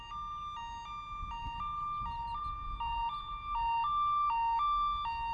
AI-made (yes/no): no